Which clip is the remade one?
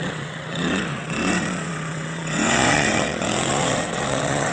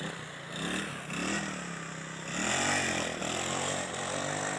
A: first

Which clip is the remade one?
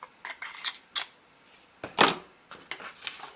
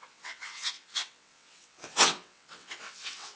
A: second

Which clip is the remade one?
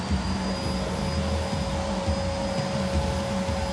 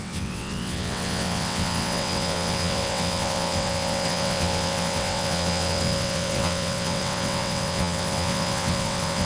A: second